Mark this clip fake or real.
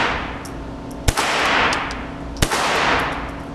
real